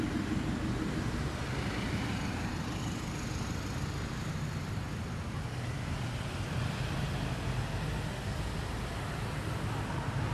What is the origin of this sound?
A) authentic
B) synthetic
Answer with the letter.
A